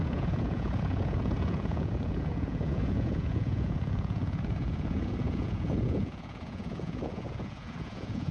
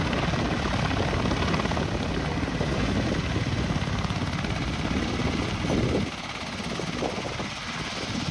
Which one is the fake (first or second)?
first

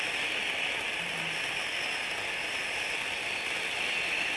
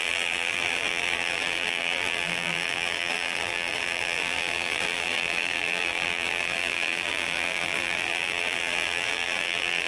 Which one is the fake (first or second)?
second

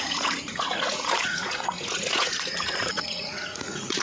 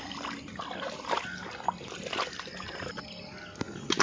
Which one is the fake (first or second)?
first